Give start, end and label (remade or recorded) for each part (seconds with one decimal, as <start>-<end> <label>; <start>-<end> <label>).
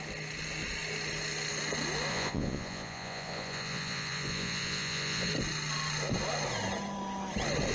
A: 0.0-2.1 recorded; 2.1-5.3 remade; 5.3-7.7 recorded